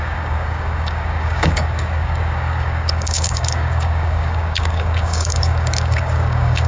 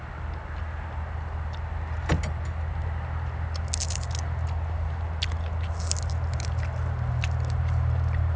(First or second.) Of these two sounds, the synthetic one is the first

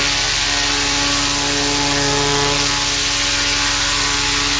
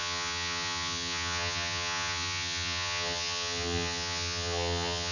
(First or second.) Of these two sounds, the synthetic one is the second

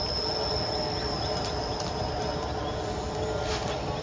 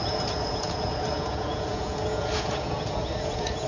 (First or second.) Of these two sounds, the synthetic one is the second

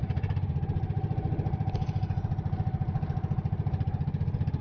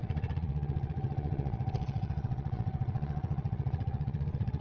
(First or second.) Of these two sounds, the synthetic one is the second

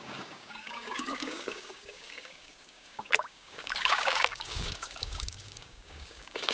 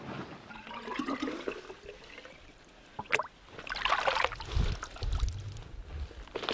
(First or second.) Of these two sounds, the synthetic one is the first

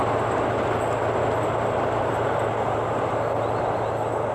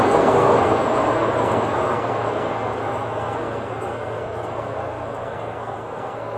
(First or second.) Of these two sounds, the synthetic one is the second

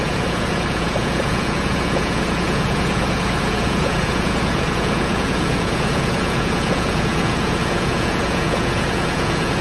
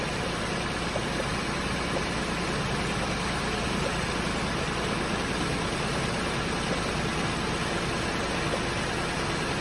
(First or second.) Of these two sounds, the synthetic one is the first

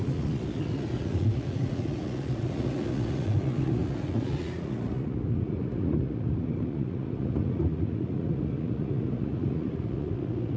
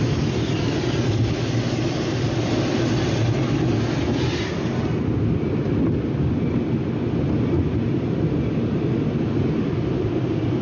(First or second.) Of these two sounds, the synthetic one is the first